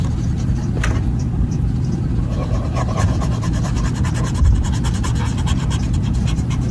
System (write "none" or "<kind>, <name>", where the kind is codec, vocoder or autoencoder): none